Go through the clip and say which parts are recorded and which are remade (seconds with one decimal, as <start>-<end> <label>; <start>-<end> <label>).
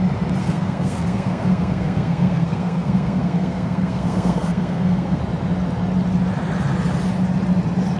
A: 0.0-0.4 recorded; 0.4-5.2 remade; 5.2-8.0 recorded